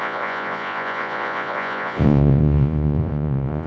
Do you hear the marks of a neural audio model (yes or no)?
yes